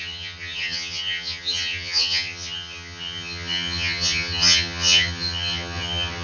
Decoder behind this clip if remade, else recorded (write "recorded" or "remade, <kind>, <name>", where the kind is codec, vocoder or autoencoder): remade, vocoder, HiFi-GAN